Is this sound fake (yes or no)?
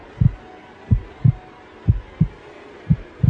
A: no